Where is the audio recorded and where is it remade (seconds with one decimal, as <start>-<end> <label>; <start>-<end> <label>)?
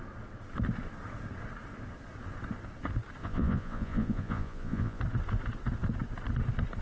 0.0-3.2 recorded; 3.2-5.0 remade; 5.0-6.8 recorded